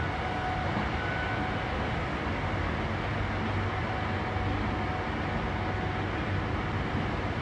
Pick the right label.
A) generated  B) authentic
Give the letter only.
B